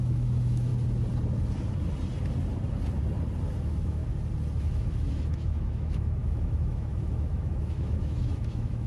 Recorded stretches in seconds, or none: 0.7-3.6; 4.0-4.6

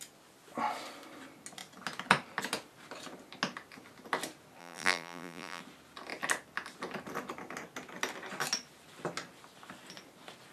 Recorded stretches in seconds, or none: 0.0-4.6; 5.6-10.5